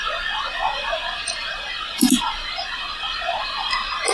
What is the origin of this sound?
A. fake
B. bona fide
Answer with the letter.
B